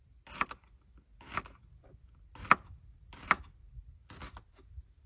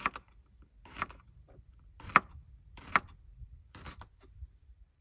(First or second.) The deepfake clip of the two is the second